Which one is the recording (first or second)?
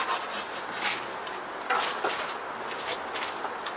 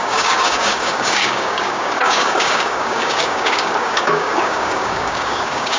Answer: first